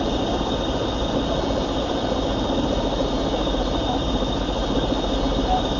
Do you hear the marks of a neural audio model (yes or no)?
no